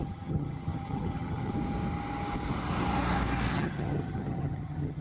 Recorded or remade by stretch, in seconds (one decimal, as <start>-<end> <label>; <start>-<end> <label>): 0.0-1.5 remade; 1.5-3.5 recorded; 3.5-5.0 remade